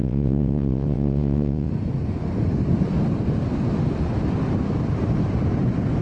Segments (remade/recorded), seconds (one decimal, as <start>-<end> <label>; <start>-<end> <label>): 0.0-1.7 remade; 1.7-6.0 recorded